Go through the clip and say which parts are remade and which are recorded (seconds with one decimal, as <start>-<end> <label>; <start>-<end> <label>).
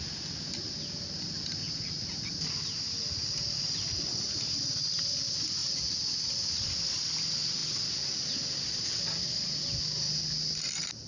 0.0-1.6 recorded; 1.6-2.2 remade; 2.2-11.1 recorded